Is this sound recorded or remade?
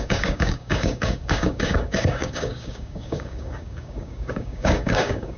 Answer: remade